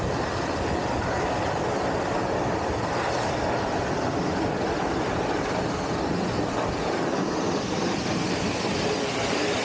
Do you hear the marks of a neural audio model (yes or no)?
no